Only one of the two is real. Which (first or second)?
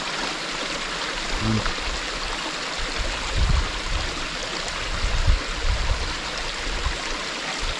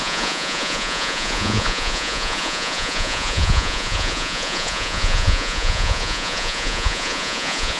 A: first